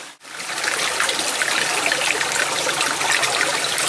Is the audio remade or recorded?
recorded